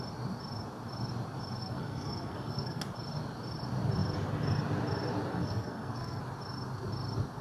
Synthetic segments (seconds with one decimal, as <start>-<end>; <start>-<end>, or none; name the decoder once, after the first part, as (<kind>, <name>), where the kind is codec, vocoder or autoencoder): 1.6-2.8 (codec, SNAC); 5.3-6.2